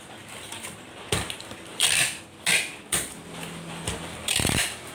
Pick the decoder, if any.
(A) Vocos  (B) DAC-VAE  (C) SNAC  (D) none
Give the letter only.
D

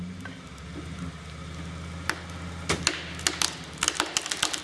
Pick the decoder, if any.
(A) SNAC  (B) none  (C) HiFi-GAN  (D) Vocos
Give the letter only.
B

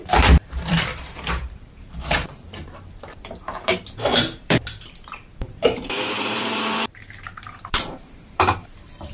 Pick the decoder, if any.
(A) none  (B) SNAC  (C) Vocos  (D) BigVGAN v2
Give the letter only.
D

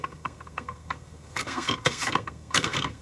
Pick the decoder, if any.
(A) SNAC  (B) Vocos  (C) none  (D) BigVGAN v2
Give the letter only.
A